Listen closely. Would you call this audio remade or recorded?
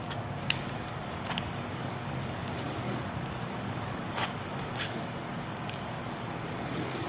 remade